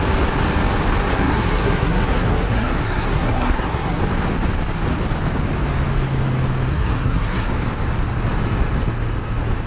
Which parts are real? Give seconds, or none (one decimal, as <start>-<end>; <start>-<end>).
0.0-1.1; 4.0-6.7; 7.5-9.7